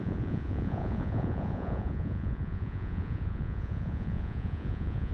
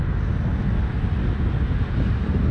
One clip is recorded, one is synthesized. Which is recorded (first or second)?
second